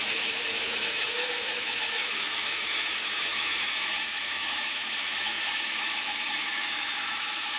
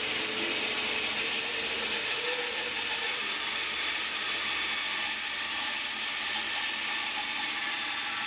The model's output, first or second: first